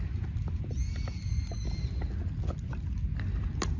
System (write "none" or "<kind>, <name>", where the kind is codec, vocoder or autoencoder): none